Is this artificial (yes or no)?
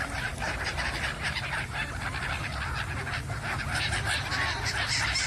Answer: no